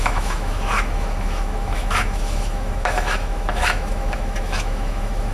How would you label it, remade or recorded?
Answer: remade